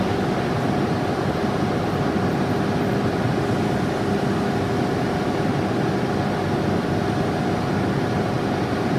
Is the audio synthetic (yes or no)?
no